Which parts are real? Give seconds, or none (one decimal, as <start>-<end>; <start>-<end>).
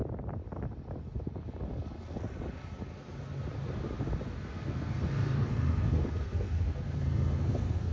0.0-4.4